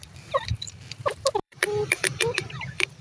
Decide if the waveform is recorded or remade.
remade